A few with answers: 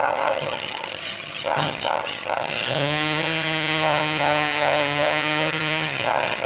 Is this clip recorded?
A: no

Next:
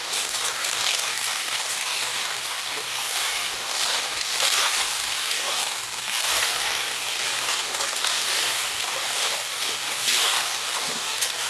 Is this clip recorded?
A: no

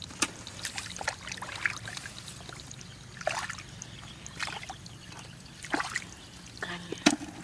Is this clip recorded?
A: yes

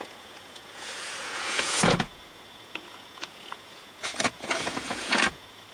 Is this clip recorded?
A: no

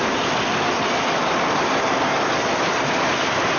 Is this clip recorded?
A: yes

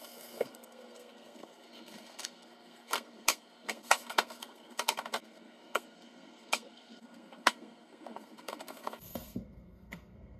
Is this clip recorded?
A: no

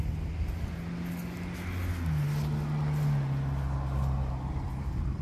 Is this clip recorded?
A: yes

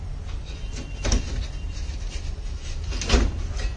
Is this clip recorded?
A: yes